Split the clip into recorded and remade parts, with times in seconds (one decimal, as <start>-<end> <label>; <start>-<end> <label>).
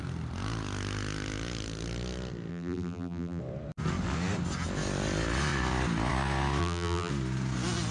0.0-2.5 recorded; 2.5-3.4 remade; 3.4-6.6 recorded; 6.6-7.1 remade; 7.1-7.9 recorded